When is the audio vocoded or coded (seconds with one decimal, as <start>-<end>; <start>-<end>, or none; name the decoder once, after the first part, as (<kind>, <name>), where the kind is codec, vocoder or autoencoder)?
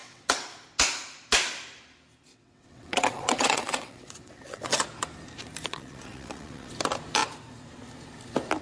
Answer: 0.0-0.5 (vocoder, WaveNeXt); 2.3-4.8; 5.7-6.7